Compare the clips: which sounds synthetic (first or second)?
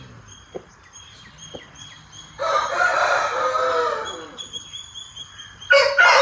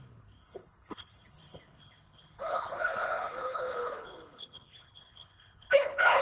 second